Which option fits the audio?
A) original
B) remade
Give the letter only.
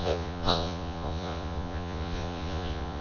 B